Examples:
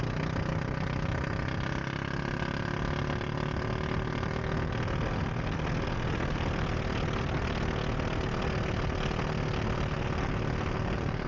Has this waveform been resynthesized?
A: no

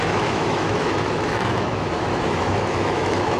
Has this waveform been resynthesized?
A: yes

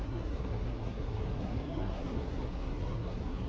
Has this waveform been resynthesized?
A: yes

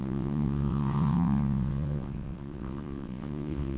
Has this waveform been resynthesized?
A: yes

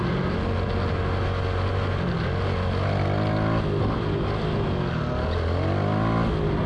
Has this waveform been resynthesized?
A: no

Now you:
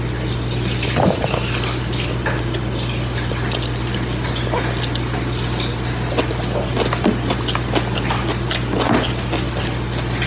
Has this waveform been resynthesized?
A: no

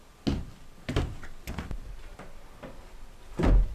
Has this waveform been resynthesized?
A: no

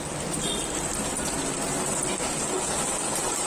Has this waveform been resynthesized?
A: no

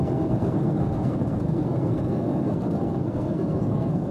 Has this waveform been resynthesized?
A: yes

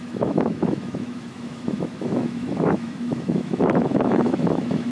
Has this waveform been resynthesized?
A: yes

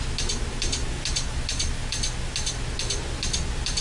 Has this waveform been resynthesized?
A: no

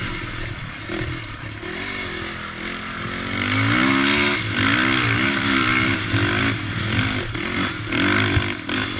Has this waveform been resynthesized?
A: no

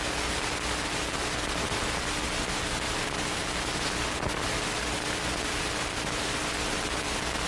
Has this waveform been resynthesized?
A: no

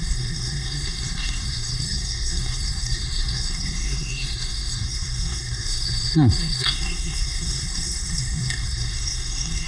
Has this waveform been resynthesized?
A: yes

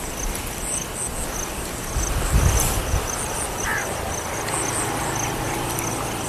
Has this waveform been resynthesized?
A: no